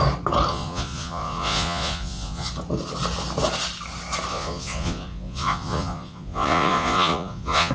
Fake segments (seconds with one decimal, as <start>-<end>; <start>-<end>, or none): 0.5-2.5; 4.3-7.7

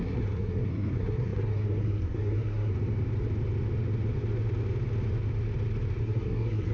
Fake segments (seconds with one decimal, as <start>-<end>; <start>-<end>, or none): 0.0-2.7; 6.0-6.7